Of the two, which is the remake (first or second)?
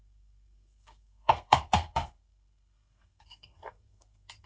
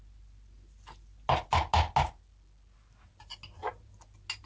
first